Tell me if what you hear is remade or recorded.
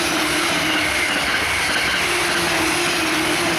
recorded